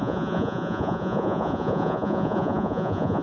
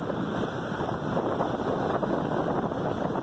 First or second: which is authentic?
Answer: second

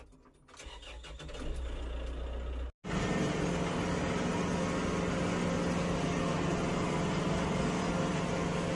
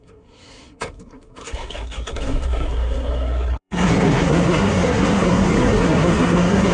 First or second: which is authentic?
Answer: first